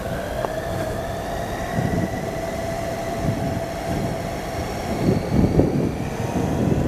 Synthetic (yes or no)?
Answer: yes